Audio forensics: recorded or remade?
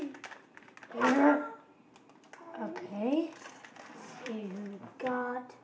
recorded